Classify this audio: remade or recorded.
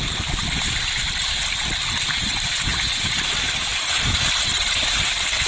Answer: recorded